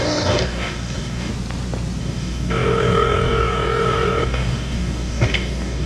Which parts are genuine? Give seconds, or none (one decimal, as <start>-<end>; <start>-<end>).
1.3-2.0